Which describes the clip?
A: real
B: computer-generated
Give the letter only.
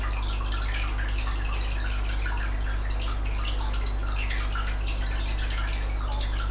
A